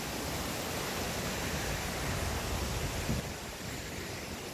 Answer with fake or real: real